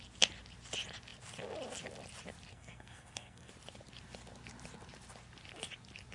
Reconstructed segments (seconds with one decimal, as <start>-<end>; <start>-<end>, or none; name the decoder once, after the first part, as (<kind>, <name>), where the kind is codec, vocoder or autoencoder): 2.5-3.5 (codec, SNAC)

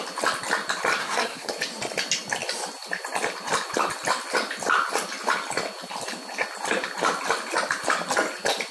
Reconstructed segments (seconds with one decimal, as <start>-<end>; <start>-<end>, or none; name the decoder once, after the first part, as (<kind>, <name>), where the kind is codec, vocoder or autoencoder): 1.0-1.5 (codec, SNAC)

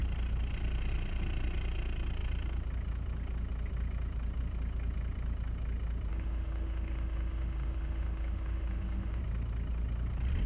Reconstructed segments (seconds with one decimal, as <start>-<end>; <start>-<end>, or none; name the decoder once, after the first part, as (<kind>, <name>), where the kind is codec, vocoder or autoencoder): 6.1-9.2 (autoencoder, DAC-VAE)

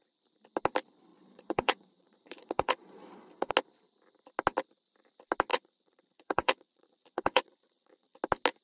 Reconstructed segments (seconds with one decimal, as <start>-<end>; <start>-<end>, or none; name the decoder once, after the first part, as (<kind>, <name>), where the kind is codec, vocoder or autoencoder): 1.1-3.5 (vocoder, Vocos); 5.5-8.2

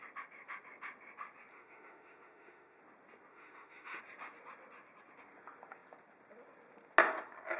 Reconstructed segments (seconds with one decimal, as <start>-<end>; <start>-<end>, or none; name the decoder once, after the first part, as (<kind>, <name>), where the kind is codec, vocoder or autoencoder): 1.5-2.8 (autoencoder, DAC-VAE); 3.3-4.0

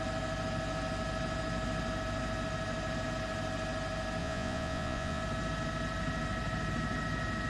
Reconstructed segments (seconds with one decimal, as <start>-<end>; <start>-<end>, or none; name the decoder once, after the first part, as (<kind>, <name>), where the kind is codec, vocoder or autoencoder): 4.2-5.2 (vocoder, Vocos)

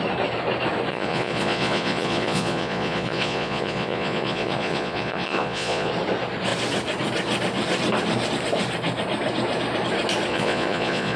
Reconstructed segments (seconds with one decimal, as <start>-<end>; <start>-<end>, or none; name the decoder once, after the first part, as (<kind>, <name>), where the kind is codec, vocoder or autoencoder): 0.9-5.9 (vocoder, Vocos); 10.3-11.2

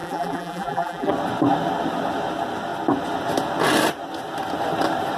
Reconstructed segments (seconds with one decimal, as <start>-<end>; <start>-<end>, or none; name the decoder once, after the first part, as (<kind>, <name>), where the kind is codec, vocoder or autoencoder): 0.0-1.1 (vocoder, BigVGAN v2)